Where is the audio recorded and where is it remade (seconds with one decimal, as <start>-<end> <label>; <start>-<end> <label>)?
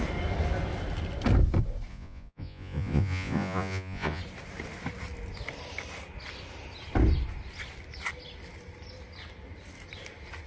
0.0-1.9 recorded; 1.9-4.2 remade; 4.2-10.5 recorded